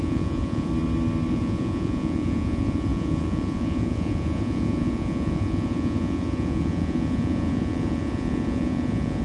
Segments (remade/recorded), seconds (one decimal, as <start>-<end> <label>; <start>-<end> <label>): 0.0-0.7 remade; 0.7-1.3 recorded; 1.3-9.2 remade